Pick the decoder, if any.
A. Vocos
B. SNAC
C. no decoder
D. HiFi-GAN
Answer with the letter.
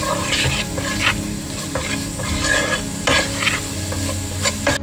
C